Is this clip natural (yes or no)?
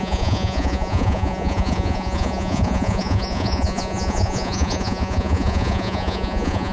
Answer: no